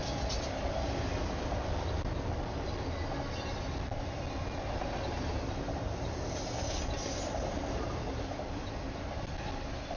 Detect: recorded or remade recorded